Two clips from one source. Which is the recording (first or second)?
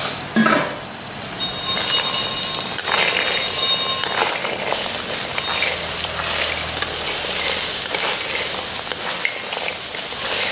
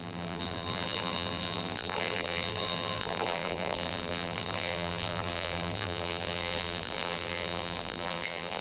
first